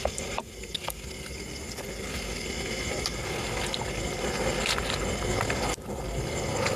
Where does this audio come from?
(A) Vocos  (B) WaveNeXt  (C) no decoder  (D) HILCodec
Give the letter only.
C